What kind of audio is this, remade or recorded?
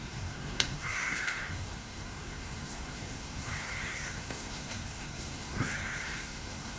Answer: remade